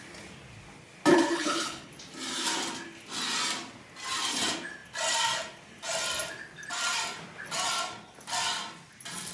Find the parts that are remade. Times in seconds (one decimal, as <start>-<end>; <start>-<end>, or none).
1.1-1.9